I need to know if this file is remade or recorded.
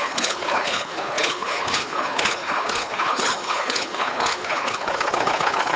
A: remade